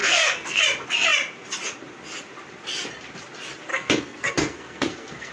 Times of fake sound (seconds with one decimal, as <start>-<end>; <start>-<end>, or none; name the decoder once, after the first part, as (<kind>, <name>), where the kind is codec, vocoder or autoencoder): 0.0-0.6 (codec, SNAC); 3.7-5.3

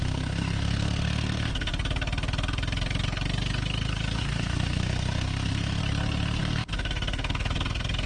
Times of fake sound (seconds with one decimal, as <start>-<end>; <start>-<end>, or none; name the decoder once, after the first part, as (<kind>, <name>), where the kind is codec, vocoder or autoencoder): 0.0-1.7 (codec, SNAC); 4.2-5.8; 6.4-8.1

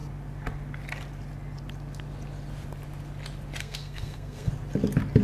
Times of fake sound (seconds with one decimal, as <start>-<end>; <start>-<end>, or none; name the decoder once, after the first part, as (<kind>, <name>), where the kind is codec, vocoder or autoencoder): 3.6-4.5 (codec, SNAC)

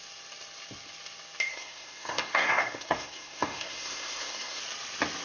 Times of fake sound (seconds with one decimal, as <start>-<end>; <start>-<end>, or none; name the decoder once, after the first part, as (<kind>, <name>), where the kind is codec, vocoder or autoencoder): 1.5-4.6 (codec, SNAC)

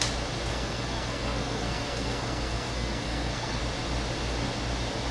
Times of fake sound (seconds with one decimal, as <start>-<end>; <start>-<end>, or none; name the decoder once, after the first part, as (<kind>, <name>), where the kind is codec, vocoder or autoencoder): 0.5-3.6 (codec, SNAC)